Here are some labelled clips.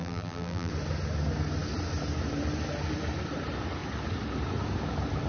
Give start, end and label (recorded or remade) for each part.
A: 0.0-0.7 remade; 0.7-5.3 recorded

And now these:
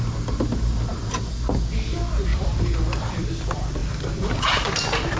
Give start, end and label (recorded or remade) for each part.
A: 0.0-2.3 recorded; 2.3-3.3 remade; 3.3-5.2 recorded

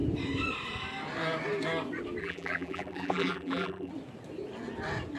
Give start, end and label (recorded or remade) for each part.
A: 0.0-2.2 recorded; 2.2-3.9 remade; 3.9-5.2 recorded

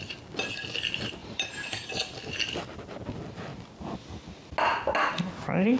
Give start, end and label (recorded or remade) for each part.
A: 0.0-1.2 recorded; 1.2-1.9 remade; 1.9-5.8 recorded

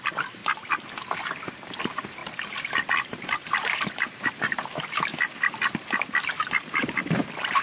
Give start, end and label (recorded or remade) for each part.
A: 0.0-0.4 remade; 0.4-1.0 recorded; 1.0-2.2 remade; 2.2-3.1 recorded; 3.1-5.1 remade; 5.1-7.0 recorded; 7.0-7.6 remade

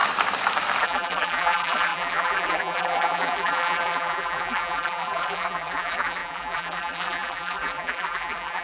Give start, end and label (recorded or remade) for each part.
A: 0.0-0.8 recorded; 0.8-8.6 remade

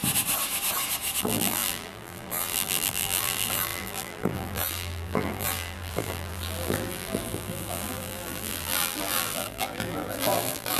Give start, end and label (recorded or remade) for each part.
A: 0.0-1.2 recorded; 1.2-10.8 remade

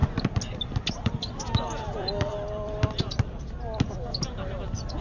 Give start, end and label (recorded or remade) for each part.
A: 0.0-0.9 recorded; 0.9-2.3 remade; 2.3-5.0 recorded